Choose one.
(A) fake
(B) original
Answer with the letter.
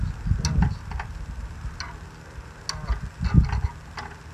B